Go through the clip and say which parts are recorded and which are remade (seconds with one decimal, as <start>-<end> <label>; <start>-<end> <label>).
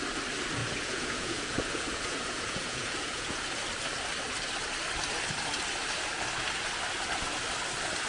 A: 0.0-0.6 recorded; 0.6-3.6 remade; 3.6-8.1 recorded